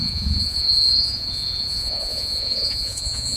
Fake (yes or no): yes